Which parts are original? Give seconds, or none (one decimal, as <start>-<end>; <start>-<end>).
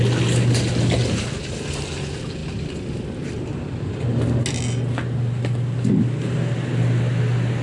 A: 0.0-7.6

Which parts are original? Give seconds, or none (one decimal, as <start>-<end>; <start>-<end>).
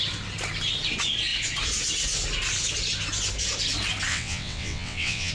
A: 0.0-4.1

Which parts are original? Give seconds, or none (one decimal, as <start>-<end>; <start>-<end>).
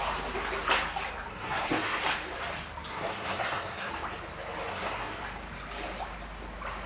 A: 0.0-1.3; 2.0-2.9; 3.9-4.7; 5.2-6.9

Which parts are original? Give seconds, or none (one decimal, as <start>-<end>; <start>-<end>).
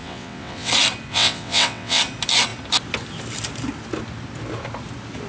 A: 0.7-1.1; 2.0-5.3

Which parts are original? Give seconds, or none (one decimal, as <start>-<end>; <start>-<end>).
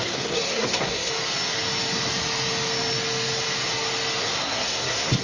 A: 1.1-4.2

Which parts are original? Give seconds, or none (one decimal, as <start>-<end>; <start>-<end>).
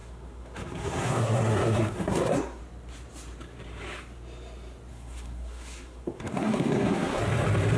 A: 2.6-4.9; 7.2-7.8